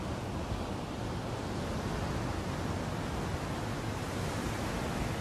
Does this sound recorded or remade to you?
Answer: recorded